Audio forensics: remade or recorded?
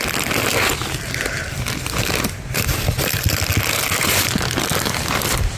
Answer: recorded